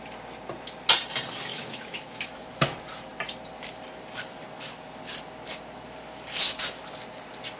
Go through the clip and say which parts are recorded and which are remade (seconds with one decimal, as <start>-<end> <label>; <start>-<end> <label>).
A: 0.0-1.5 recorded; 1.5-2.5 remade; 2.5-7.6 recorded